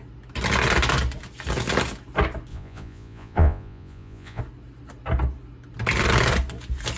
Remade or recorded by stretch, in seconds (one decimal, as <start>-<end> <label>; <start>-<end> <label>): 0.0-2.5 recorded; 2.5-4.4 remade; 4.4-7.0 recorded